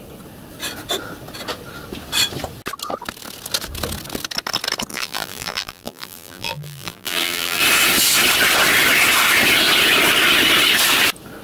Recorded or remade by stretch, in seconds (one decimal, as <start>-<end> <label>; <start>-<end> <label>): 0.0-4.9 recorded; 4.9-7.6 remade; 7.6-11.4 recorded